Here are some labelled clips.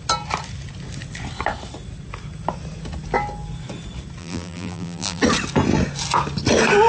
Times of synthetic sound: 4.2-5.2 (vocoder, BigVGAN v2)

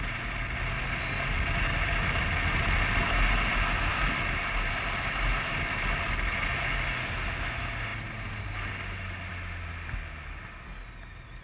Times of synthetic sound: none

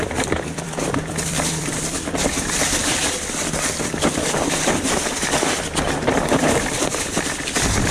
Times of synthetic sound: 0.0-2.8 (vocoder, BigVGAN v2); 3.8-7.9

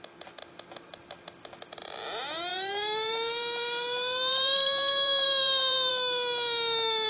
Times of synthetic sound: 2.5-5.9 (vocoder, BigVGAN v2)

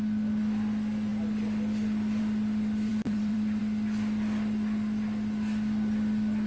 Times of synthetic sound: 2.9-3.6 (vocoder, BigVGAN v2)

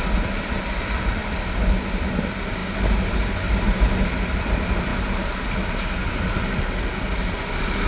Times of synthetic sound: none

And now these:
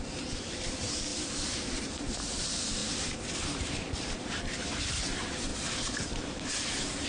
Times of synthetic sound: 0.0-7.1 (vocoder, BigVGAN v2)

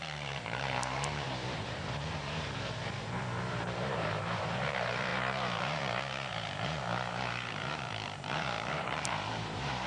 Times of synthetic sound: 0.0-9.9 (vocoder, BigVGAN v2)